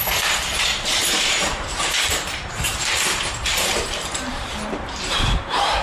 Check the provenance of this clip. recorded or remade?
remade